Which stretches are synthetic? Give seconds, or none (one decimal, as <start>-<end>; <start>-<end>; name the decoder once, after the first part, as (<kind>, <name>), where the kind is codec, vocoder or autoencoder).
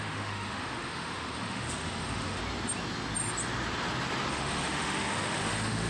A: 0.0-2.4 (autoencoder, DAC-VAE); 4.3-5.9